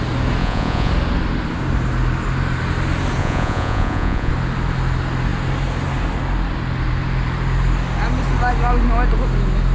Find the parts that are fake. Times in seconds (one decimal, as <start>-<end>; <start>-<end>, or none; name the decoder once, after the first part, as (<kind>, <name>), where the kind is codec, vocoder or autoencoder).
0.4-0.9 (vocoder, Vocos); 3.2-4.3